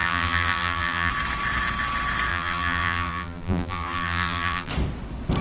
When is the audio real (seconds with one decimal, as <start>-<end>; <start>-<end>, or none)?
1.1-2.3; 4.7-5.4